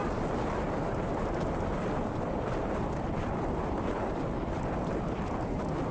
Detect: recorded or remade recorded